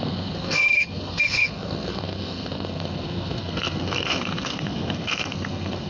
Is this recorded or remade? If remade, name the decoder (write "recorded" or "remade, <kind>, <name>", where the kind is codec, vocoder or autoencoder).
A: remade, codec, SNAC